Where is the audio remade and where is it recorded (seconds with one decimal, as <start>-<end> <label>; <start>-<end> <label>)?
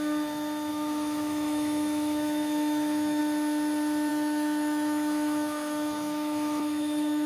0.0-0.7 recorded; 0.7-3.2 remade; 3.2-4.1 recorded; 4.1-7.3 remade